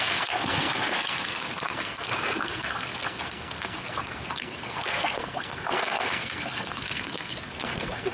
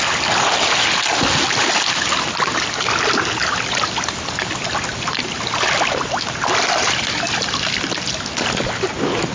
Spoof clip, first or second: first